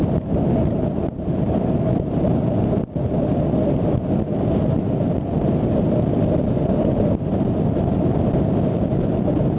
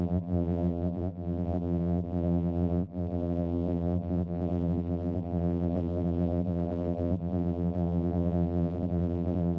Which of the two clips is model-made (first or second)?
second